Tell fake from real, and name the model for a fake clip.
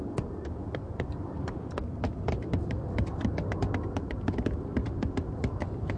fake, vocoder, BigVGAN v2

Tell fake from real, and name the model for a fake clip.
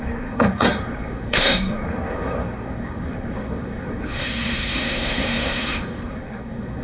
fake, codec, SNAC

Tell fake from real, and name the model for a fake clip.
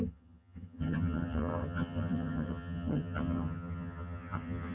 fake, vocoder, HiFi-GAN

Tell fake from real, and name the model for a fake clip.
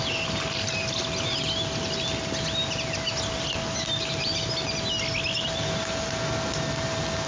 real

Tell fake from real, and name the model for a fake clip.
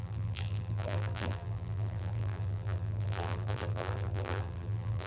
fake, vocoder, BigVGAN v2